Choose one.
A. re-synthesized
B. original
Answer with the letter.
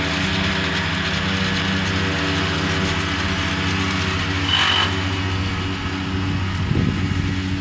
B